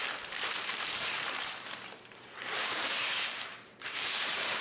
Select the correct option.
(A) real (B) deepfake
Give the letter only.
B